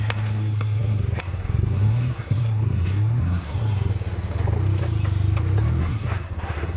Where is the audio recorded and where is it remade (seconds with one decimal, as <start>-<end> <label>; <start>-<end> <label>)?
0.0-3.9 remade; 3.9-5.8 recorded; 5.8-6.8 remade